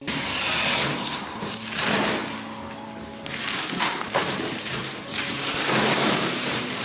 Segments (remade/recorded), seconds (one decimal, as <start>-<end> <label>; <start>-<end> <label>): 0.0-2.2 remade; 2.2-3.4 recorded; 3.4-6.8 remade